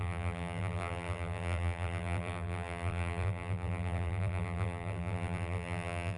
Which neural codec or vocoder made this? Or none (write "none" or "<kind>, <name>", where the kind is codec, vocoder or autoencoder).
vocoder, BigVGAN v2